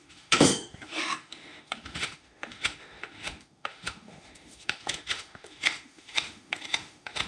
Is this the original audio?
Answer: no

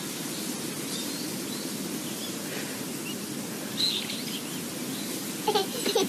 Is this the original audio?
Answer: yes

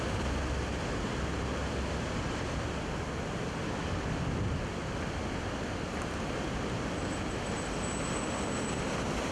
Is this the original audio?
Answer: yes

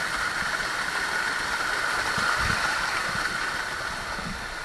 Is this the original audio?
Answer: yes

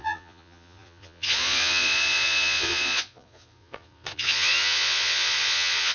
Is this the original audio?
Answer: no